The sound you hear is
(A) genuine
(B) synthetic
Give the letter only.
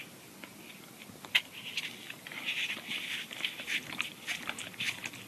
A